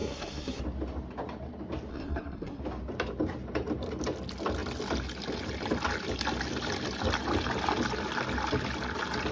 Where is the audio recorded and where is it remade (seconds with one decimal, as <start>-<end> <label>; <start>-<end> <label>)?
0.0-0.6 remade; 0.6-1.9 recorded; 1.9-2.6 remade; 2.6-9.3 recorded